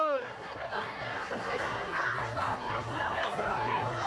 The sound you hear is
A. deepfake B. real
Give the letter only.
A